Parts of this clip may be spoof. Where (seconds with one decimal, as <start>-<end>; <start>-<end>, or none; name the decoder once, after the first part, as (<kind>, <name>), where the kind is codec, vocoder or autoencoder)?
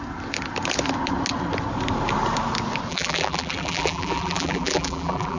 2.9-5.4 (vocoder, BigVGAN v2)